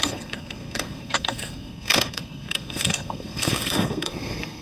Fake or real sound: fake